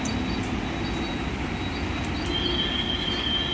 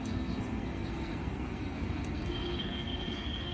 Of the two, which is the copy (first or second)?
second